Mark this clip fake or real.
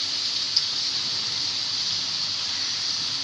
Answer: real